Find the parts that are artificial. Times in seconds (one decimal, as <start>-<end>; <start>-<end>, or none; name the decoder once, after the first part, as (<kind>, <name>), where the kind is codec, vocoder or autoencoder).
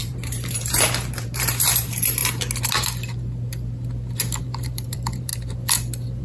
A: 0.0-2.2 (vocoder, BigVGAN v2); 4.4-5.3